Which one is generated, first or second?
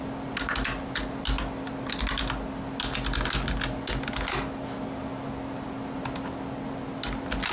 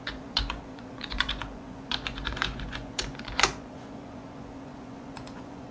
second